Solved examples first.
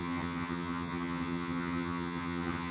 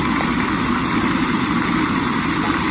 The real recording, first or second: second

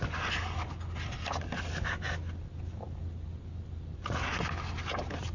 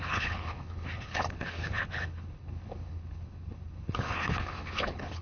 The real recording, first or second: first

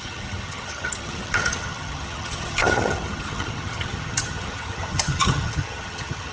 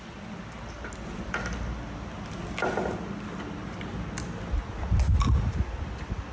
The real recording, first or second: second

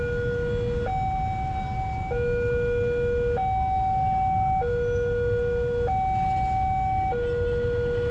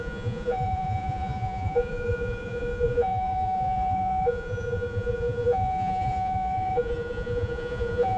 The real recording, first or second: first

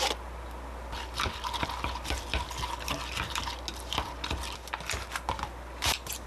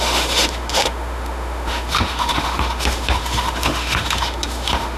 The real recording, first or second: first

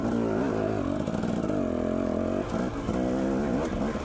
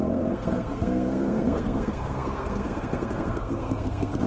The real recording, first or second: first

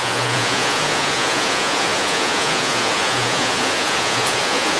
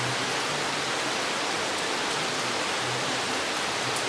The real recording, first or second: second